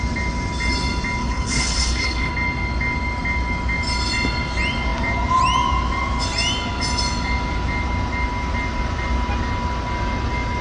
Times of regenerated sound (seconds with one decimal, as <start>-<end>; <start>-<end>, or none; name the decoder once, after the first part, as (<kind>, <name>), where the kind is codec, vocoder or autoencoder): 1.2-2.3 (codec, HILCodec)